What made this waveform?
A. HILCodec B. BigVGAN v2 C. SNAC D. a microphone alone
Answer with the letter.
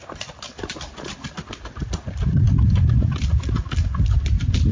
D